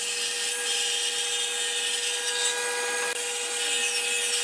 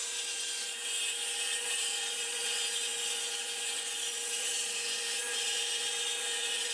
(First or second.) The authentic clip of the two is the first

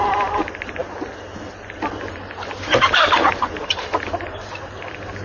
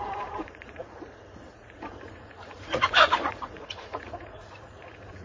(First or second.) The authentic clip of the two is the first